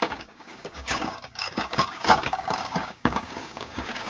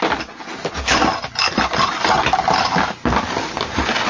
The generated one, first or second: first